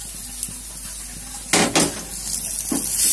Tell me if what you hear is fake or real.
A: real